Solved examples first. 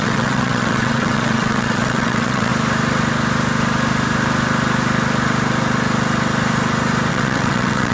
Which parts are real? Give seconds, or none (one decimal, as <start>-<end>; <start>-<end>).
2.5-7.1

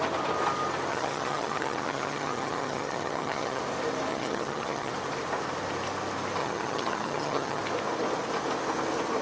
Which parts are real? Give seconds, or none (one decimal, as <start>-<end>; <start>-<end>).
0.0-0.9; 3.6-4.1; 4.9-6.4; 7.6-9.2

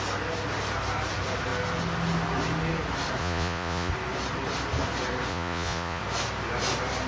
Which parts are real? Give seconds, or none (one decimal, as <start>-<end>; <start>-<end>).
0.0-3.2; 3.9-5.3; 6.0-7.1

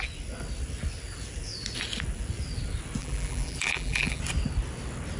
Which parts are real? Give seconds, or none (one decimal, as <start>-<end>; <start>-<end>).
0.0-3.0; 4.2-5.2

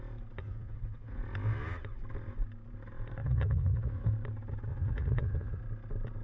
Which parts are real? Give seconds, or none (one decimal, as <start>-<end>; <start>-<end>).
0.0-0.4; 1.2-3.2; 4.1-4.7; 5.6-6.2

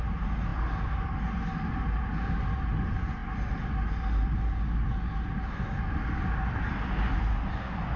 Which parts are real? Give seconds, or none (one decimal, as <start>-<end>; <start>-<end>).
0.0-8.0